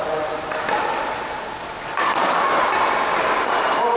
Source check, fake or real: real